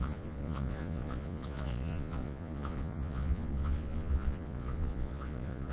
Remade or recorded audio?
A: remade